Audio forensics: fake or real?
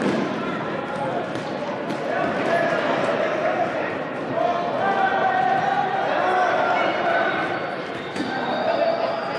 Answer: real